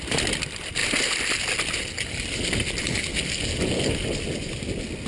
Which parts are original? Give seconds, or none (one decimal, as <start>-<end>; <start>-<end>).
0.0-5.1